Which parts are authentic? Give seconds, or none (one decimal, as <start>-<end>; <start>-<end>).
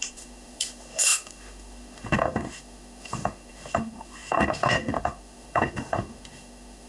none